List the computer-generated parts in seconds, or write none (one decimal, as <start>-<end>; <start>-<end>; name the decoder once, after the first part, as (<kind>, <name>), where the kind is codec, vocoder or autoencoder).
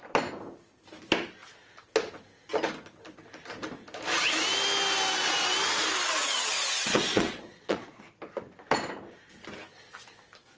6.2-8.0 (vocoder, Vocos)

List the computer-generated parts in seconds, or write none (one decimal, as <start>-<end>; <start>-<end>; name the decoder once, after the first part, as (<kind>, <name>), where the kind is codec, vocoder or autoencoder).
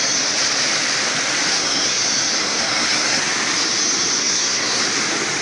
1.5-2.0 (codec, SNAC); 2.4-3.2; 4.2-4.8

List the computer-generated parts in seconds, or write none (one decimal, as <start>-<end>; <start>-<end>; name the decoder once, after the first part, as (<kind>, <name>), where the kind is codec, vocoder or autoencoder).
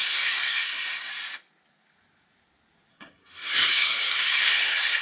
0.0-1.1 (codec, SNAC); 2.9-5.0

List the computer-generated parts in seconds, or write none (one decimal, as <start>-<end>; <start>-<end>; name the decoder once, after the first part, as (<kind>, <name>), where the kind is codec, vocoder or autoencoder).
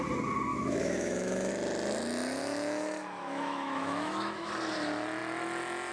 0.5-1.5 (autoencoder, DAC-VAE); 2.4-4.5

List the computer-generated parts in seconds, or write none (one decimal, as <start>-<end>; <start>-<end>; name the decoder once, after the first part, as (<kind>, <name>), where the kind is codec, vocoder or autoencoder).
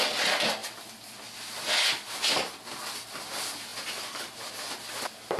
none